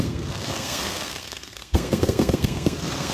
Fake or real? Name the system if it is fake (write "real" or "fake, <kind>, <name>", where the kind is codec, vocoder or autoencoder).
fake, codec, SNAC